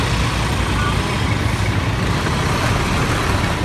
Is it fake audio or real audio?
real